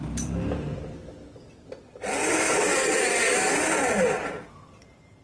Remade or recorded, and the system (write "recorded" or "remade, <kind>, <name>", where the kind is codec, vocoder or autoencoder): recorded